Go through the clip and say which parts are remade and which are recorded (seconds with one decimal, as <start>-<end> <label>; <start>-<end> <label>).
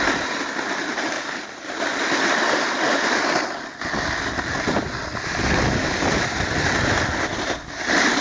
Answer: 0.0-0.9 recorded; 0.9-3.4 remade; 3.4-7.3 recorded; 7.3-8.2 remade